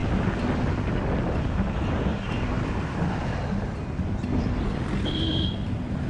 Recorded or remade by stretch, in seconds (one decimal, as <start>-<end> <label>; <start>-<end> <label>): 0.0-2.1 recorded; 2.1-6.1 remade

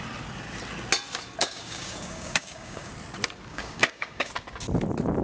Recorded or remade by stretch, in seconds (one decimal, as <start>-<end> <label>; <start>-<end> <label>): 0.0-1.4 recorded; 1.4-2.9 remade; 2.9-3.5 recorded; 3.5-4.3 remade; 4.3-5.2 recorded

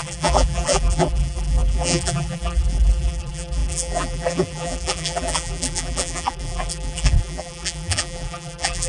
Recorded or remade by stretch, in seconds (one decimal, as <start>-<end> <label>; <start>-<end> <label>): 0.0-8.9 remade

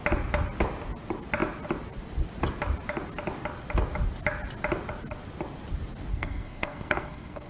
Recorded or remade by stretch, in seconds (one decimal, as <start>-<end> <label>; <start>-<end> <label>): 0.0-6.1 recorded; 6.1-7.5 remade

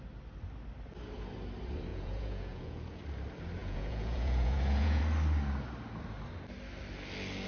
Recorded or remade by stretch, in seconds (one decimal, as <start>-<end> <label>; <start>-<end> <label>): 0.0-1.9 recorded; 1.9-3.0 remade; 3.0-3.6 recorded; 3.6-5.0 remade; 5.0-7.5 recorded

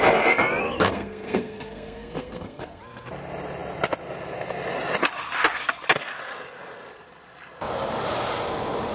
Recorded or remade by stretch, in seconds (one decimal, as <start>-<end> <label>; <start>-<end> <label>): 0.0-0.6 recorded; 0.6-2.8 remade; 2.8-8.9 recorded

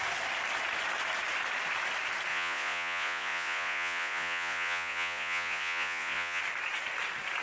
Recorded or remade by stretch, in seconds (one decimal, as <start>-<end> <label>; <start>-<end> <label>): 0.0-2.3 recorded; 2.3-6.4 remade; 6.4-7.4 recorded

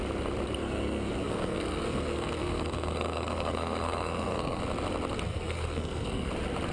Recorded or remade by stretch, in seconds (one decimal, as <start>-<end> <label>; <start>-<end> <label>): 0.0-0.6 recorded; 0.6-4.6 remade; 4.6-5.3 recorded; 5.3-6.3 remade; 6.3-6.7 recorded